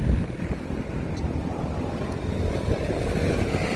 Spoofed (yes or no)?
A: no